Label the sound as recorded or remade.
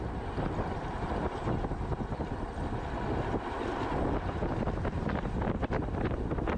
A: recorded